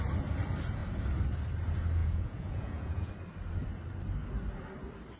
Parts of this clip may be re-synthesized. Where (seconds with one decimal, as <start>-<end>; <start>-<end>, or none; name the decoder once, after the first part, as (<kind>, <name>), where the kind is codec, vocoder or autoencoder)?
2.0-3.1 (vocoder, Vocos)